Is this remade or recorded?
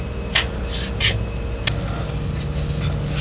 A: recorded